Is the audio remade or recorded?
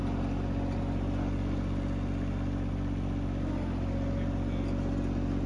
recorded